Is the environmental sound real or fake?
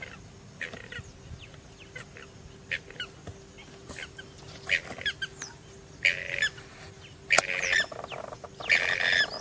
real